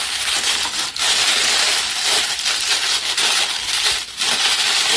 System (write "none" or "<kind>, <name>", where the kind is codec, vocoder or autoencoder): vocoder, BigVGAN v2